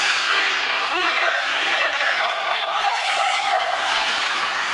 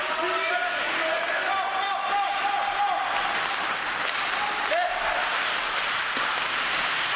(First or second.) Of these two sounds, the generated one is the first